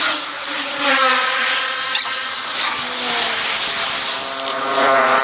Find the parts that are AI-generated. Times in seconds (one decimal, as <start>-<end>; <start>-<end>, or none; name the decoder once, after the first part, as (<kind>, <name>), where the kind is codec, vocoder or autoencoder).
0.0-2.6 (vocoder, Vocos); 4.5-5.2